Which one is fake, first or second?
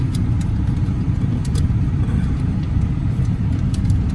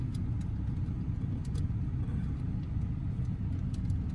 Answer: first